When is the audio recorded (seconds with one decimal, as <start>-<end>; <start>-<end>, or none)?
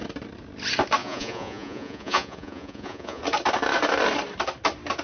0.0-1.0; 3.2-5.0